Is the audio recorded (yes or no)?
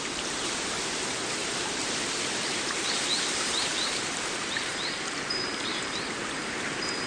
no